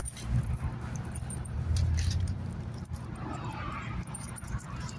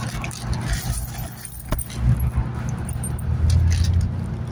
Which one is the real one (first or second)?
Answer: second